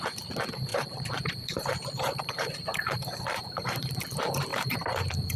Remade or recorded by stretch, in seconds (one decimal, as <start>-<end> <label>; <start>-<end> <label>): 0.0-0.7 recorded; 0.7-3.9 remade; 3.9-4.5 recorded; 4.5-5.4 remade